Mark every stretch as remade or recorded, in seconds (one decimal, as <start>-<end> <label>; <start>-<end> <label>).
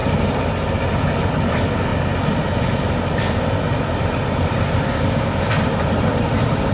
0.0-1.5 remade; 1.5-1.9 recorded; 1.9-5.9 remade; 5.9-6.7 recorded